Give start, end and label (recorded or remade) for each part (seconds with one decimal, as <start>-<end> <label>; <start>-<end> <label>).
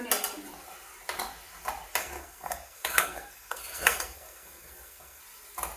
0.0-2.0 recorded; 2.0-5.2 remade; 5.2-5.8 recorded